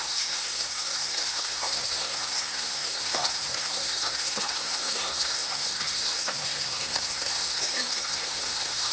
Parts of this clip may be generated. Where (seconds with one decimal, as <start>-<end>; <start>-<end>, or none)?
0.0-8.9